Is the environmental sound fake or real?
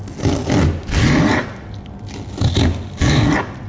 real